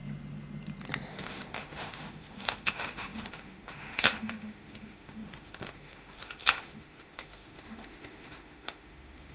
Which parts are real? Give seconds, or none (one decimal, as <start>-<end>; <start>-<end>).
0.0-1.1